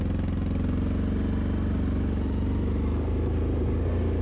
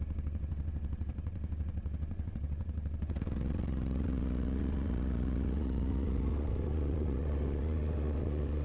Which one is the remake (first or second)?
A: second